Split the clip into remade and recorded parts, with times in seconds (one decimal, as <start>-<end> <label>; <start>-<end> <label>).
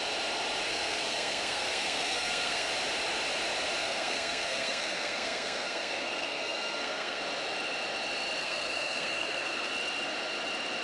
0.0-0.7 recorded; 0.7-2.7 remade; 2.7-3.8 recorded; 3.8-7.2 remade; 7.2-8.4 recorded; 8.4-9.7 remade; 9.7-10.8 recorded